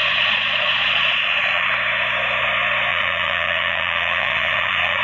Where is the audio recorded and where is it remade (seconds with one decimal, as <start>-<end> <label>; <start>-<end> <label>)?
0.0-1.7 remade; 1.7-2.9 recorded; 2.9-5.0 remade